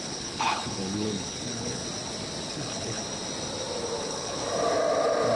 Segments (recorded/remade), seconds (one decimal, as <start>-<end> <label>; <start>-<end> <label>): 0.0-1.8 remade; 1.8-2.5 recorded; 2.5-3.0 remade; 3.0-4.0 recorded; 4.0-4.4 remade; 4.4-5.4 recorded